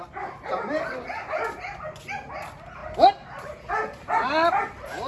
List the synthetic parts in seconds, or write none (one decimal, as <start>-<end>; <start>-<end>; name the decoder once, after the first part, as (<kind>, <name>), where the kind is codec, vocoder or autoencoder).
none